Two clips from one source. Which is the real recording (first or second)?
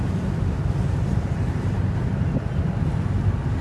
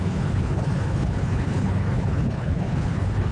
first